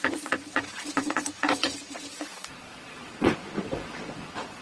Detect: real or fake fake